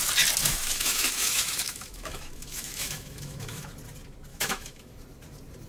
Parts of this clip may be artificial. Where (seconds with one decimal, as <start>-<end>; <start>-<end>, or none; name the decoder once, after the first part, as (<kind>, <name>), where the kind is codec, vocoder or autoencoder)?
0.4-3.7 (autoencoder, DAC-VAE); 4.3-4.9